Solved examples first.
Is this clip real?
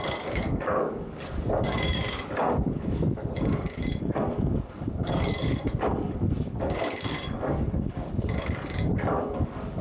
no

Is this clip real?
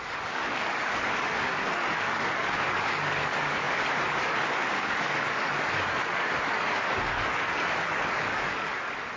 no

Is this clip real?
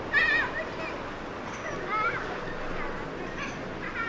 yes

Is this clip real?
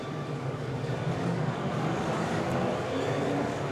no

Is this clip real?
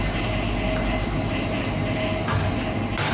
yes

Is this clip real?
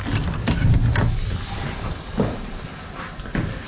yes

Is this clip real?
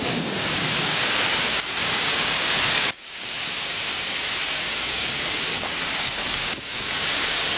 no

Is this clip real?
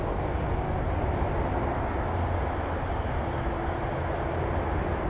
yes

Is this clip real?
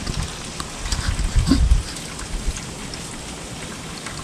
yes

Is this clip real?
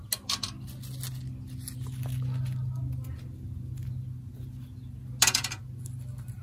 yes